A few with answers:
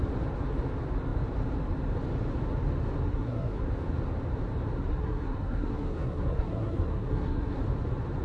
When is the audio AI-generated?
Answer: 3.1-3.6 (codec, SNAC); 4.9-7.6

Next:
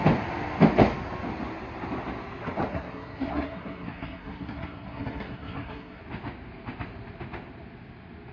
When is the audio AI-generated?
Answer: 2.7-6.0 (codec, SNAC)

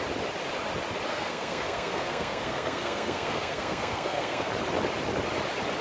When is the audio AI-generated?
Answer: 1.1-4.5 (codec, SNAC)

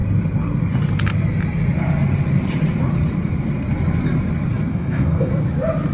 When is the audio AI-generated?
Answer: 4.7-5.3 (codec, SNAC)

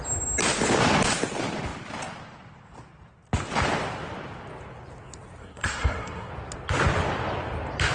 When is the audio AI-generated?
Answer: 5.4-6.3 (codec, SNAC)

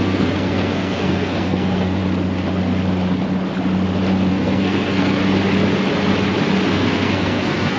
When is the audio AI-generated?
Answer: 0.0-2.0 (codec, SNAC); 4.3-5.2; 6.7-7.8

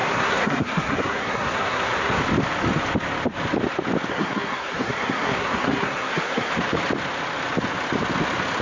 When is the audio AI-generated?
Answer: 0.0-2.2 (codec, SNAC); 4.1-6.5

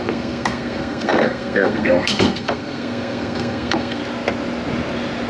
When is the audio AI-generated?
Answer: 0.0-4.0 (codec, SNAC)